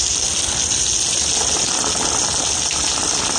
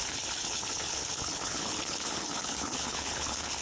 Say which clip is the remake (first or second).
second